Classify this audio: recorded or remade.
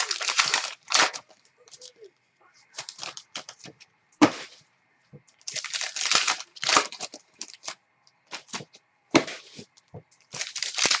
remade